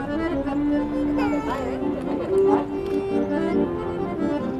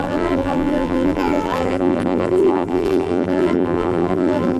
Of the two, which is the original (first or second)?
first